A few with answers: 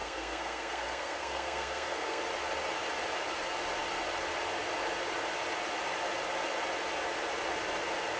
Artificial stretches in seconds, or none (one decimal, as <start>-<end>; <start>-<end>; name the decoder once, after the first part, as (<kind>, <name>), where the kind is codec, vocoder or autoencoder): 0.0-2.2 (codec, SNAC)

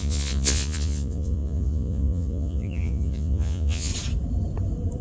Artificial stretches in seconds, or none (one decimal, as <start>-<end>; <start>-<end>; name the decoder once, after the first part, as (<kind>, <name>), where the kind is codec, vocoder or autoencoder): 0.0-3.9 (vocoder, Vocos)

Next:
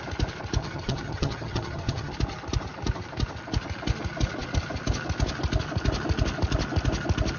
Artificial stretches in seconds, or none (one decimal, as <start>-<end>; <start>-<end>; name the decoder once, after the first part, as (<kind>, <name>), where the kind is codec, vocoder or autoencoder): 0.6-2.1 (vocoder, HiFi-GAN)